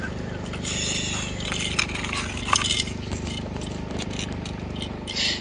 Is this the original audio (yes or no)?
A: yes